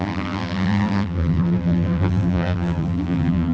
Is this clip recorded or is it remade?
remade